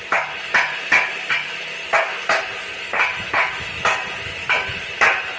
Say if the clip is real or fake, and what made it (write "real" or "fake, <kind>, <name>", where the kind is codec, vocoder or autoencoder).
real